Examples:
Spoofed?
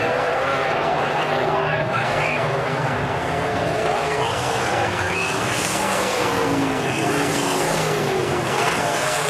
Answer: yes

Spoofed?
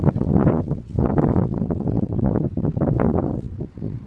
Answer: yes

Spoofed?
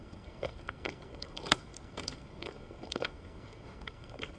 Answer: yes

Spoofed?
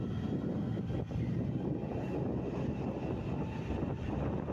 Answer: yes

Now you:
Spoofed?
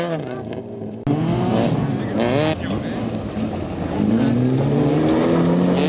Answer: no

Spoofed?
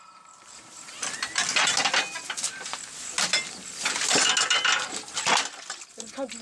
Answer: no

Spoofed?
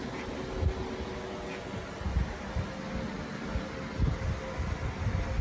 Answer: no